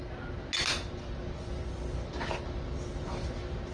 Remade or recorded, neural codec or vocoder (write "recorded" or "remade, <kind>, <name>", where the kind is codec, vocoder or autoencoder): recorded